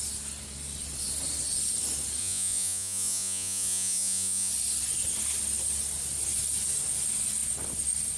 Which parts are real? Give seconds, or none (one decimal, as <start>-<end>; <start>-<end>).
0.0-2.2; 4.5-8.2